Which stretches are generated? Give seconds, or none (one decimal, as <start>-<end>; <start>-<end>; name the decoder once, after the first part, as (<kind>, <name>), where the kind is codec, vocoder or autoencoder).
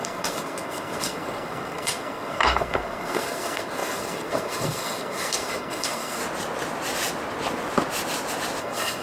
0.0-6.2 (codec, SNAC); 8.6-9.0